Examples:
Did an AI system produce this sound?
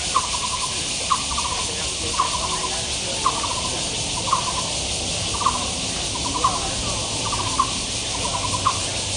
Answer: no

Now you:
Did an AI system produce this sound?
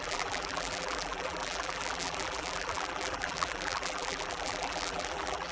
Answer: yes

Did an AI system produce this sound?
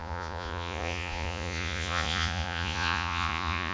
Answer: yes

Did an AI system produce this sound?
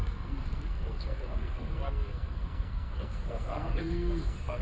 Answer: yes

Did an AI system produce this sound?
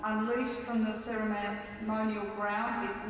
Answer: no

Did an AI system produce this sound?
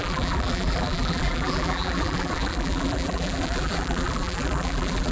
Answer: yes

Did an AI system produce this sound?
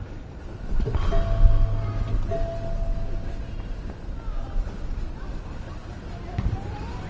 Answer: no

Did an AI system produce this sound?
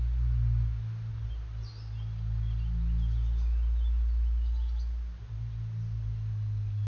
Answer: no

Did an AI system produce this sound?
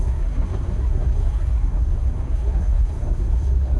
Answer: yes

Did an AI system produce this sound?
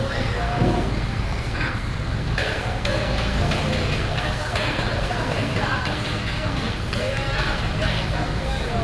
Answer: yes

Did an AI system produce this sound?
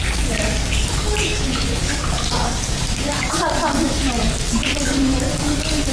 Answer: yes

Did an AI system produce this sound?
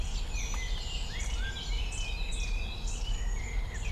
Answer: no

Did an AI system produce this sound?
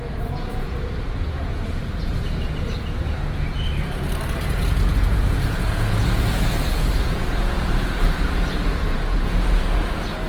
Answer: yes